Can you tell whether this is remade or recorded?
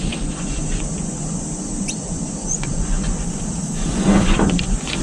remade